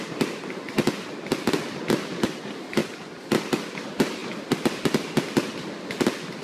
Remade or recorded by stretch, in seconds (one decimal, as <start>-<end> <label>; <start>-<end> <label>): 0.0-6.4 recorded